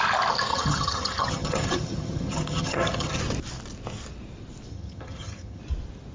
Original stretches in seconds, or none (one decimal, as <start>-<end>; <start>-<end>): 0.0-0.5; 3.2-4.7; 5.6-6.1